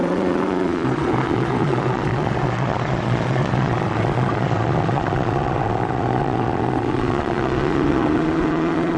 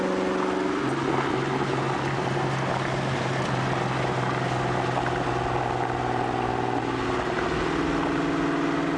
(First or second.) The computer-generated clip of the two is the first